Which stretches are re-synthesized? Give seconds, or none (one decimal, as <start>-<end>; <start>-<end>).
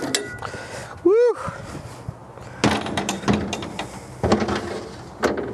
none